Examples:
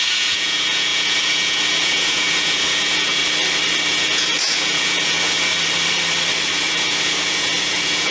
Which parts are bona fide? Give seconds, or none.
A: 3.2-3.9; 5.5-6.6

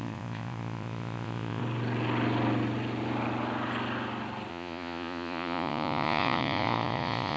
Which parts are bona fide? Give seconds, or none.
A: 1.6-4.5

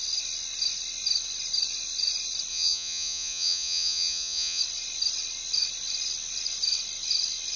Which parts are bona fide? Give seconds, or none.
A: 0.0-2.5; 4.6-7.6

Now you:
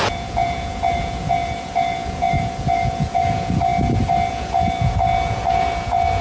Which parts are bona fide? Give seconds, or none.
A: 3.7-4.3

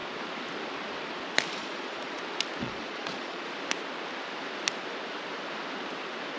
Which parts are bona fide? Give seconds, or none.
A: 0.0-1.6; 2.2-2.6; 3.5-6.4

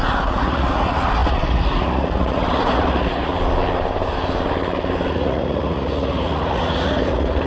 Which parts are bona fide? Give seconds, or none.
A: 3.3-5.1

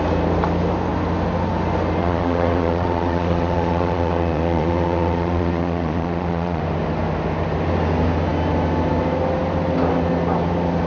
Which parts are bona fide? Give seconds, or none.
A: 0.0-2.0; 6.6-10.9

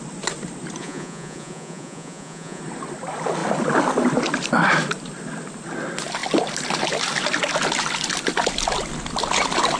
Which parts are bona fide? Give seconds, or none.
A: 0.0-0.8; 2.6-9.8